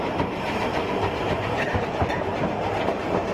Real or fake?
fake